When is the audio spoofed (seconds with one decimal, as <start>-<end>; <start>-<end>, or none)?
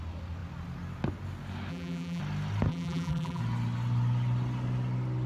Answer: 1.7-2.2; 2.7-3.4